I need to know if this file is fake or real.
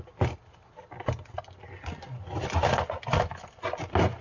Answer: real